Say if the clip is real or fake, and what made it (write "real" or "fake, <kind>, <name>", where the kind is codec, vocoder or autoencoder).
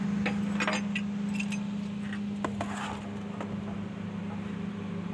real